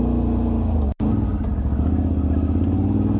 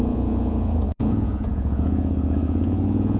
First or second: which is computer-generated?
second